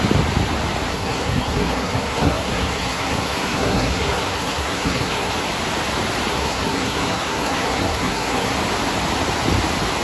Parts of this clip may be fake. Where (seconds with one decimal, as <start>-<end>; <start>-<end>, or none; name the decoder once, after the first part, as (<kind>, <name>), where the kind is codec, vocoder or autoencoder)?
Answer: 0.9-5.3 (codec, SNAC); 6.3-8.5